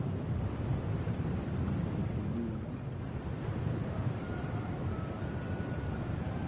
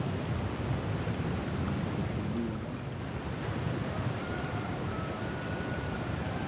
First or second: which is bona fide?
first